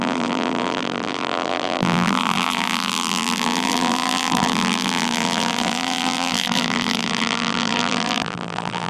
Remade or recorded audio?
remade